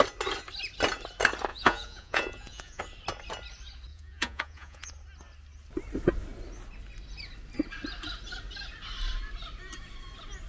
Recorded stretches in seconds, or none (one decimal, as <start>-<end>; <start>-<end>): 0.0-1.5; 2.8-3.9; 4.9-10.5